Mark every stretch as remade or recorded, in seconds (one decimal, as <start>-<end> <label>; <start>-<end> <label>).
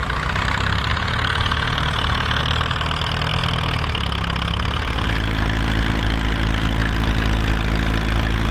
0.0-0.9 recorded; 0.9-2.4 remade; 2.4-8.5 recorded